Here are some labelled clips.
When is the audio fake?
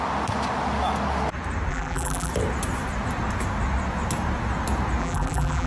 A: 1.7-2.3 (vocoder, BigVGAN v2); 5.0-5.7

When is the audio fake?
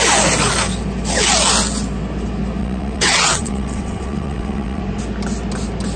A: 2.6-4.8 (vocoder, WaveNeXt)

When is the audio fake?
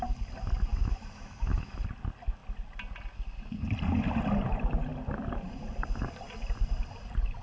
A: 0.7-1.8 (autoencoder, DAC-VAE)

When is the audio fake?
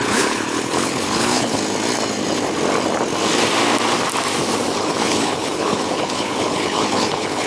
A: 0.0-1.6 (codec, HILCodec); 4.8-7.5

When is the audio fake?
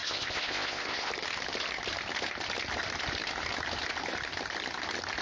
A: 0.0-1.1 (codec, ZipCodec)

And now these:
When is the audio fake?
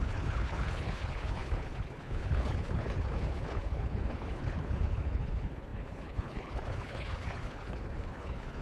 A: 0.0-8.6 (codec, HILCodec)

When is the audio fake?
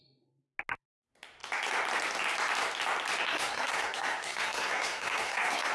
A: 3.3-5.7 (codec, SNAC)